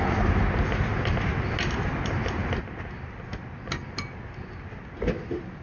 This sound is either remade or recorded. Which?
recorded